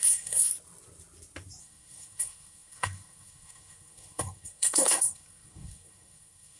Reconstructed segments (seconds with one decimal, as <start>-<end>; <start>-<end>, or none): 0.0-0.5; 1.6-6.6

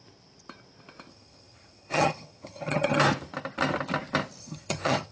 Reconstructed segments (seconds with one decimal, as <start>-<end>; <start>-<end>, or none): 1.1-3.0; 4.4-5.1

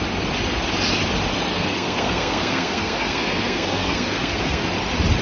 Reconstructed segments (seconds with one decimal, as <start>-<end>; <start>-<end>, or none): 1.5-4.6

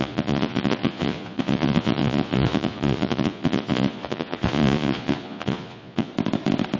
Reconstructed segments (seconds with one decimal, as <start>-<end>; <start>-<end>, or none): 0.0-6.1

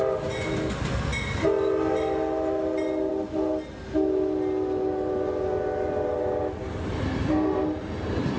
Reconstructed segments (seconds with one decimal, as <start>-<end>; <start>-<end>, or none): none

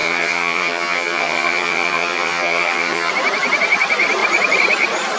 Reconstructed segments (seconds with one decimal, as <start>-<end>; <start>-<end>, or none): 0.0-3.1

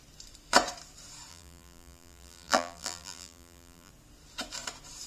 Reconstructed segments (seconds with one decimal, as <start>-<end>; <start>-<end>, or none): 1.3-3.9